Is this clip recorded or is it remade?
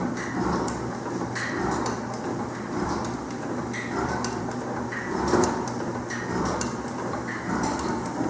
remade